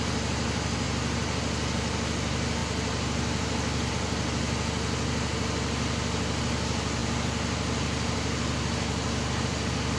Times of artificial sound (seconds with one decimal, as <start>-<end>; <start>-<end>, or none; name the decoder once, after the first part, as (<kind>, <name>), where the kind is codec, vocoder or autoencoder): none